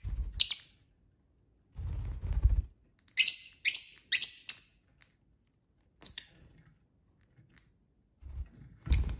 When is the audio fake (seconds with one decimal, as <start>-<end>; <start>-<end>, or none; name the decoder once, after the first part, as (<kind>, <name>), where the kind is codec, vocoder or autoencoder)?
none